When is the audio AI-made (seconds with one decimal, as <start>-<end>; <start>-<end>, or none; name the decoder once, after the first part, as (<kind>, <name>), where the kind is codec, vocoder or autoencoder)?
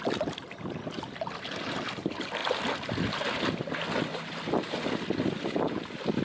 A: none